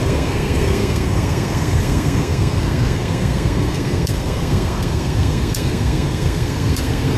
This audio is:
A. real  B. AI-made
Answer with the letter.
B